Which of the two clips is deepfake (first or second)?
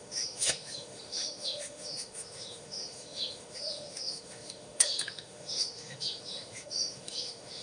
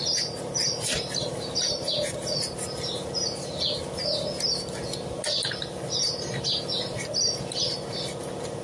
first